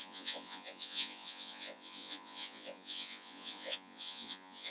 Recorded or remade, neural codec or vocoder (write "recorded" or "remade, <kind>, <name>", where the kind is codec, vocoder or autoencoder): remade, vocoder, Vocos